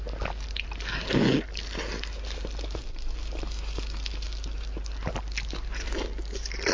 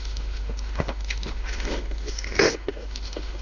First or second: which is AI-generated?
second